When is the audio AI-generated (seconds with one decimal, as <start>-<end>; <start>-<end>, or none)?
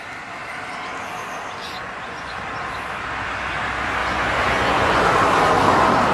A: 1.6-2.4; 4.0-5.0